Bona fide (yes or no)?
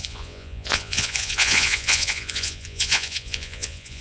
no